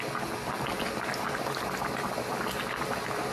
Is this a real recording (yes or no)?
yes